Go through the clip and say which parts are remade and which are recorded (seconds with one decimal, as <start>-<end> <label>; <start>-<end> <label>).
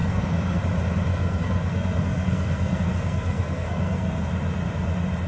0.0-0.6 remade; 0.6-1.1 recorded; 1.1-4.3 remade; 4.3-5.3 recorded